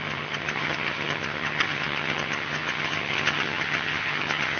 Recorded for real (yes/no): no